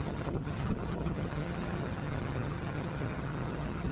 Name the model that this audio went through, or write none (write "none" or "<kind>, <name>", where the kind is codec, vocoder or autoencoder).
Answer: vocoder, HiFi-GAN